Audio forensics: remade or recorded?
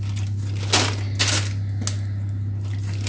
recorded